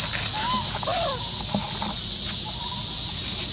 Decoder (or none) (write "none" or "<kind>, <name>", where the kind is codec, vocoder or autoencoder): none